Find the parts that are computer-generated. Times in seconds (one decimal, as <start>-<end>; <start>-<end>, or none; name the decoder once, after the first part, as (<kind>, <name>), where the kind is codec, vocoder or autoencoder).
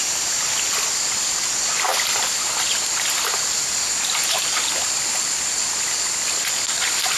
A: none